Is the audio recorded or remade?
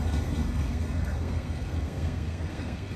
remade